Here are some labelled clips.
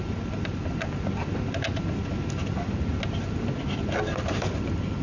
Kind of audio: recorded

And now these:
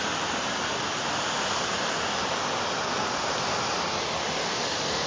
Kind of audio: recorded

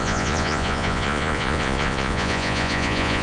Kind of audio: remade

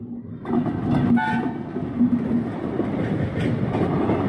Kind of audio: recorded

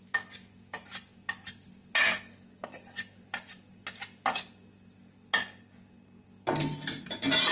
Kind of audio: recorded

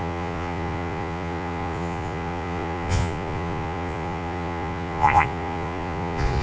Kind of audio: remade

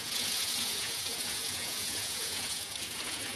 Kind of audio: remade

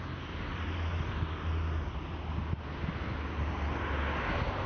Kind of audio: recorded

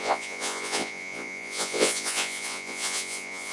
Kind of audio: remade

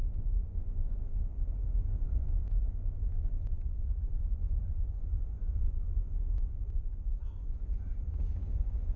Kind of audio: remade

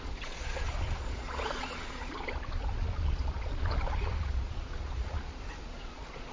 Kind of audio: remade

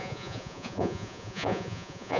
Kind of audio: remade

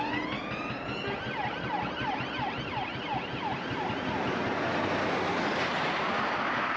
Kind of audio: recorded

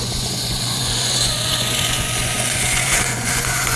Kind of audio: remade